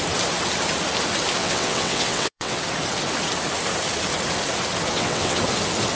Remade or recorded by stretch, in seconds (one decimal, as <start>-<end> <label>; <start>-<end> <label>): 0.0-1.4 recorded; 1.4-2.6 remade; 2.6-4.9 recorded; 4.9-5.4 remade; 5.4-5.9 recorded